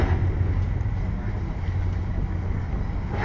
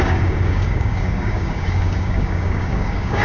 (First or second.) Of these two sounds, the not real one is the second